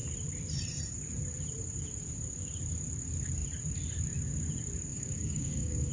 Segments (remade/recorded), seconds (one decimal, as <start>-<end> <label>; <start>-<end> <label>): 0.0-4.9 recorded; 4.9-5.9 remade